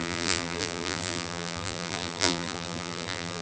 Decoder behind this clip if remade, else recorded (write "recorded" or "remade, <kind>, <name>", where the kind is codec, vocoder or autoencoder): remade, vocoder, BigVGAN v2